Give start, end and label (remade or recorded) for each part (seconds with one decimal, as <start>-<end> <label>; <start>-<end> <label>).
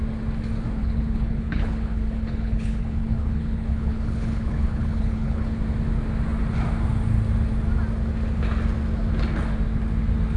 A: 0.0-0.8 recorded; 0.8-5.6 remade; 5.6-10.4 recorded